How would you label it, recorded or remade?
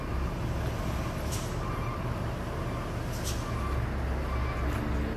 recorded